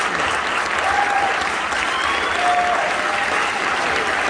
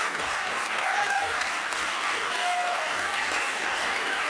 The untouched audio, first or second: first